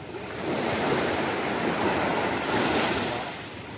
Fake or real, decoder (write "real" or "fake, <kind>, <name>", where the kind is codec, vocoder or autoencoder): real